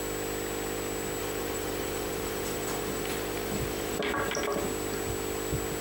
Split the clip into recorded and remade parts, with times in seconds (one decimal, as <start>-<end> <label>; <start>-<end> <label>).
0.0-1.2 recorded; 1.2-4.0 remade; 4.0-5.8 recorded